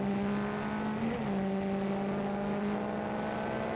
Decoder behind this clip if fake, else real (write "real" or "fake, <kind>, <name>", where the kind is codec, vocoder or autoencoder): real